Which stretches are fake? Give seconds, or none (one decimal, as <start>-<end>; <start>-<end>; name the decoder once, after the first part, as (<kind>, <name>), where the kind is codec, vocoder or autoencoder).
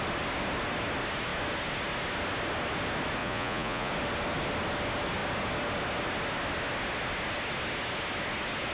3.2-3.9 (vocoder, Vocos)